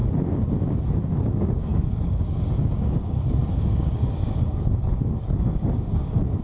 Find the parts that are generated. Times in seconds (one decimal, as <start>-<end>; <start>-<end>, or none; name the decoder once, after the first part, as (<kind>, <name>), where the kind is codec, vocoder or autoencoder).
1.2-6.4 (codec, DAC)